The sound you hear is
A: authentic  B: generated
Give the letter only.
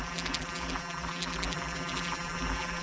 B